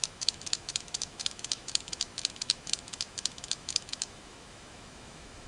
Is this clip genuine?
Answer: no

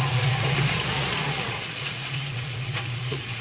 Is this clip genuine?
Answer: no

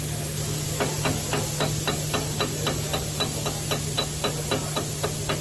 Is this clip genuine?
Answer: yes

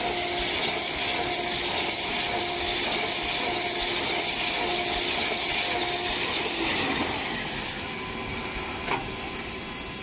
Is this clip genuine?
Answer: yes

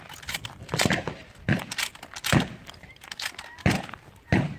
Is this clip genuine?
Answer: yes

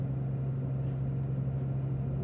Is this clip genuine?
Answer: yes